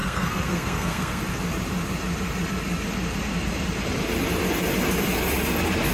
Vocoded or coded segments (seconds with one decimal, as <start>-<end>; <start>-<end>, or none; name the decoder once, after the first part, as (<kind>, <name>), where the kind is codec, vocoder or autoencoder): 0.0-1.2 (codec, SNAC)